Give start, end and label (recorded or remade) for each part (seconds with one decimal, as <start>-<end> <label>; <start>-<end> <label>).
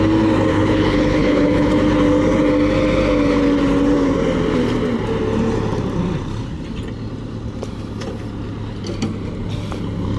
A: 0.0-0.5 recorded; 0.5-1.7 remade; 1.7-10.2 recorded